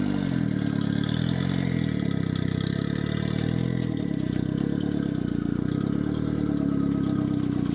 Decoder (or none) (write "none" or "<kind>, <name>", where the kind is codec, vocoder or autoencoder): none